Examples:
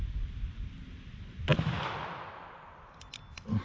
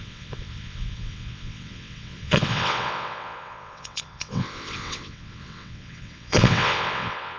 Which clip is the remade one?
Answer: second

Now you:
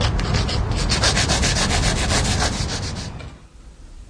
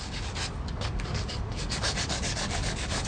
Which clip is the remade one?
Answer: second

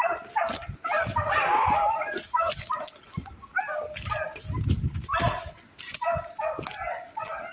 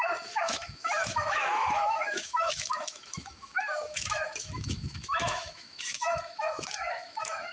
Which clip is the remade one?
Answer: second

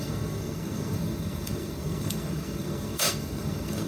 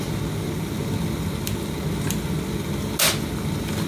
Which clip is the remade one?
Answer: first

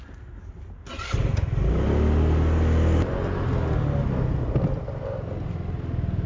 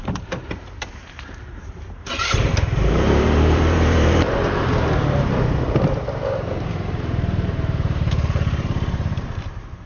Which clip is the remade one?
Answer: second